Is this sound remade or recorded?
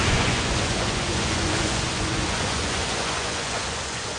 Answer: remade